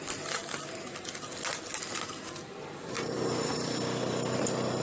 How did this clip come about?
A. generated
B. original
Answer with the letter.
B